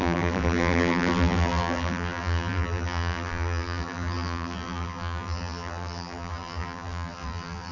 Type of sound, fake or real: fake